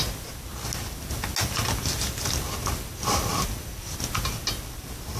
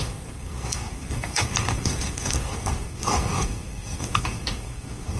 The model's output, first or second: second